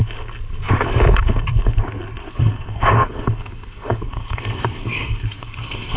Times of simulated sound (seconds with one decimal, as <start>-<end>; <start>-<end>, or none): 2.2-6.0